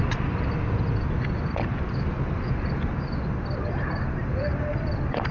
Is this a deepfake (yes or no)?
no